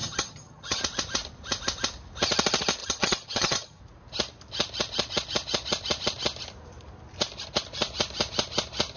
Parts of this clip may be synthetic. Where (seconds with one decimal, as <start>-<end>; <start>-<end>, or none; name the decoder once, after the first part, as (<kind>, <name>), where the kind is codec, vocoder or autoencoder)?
0.0-0.8 (vocoder, HiFi-GAN); 2.8-3.8